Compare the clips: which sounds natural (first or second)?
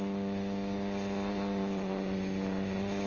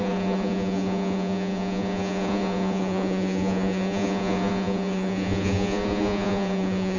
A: first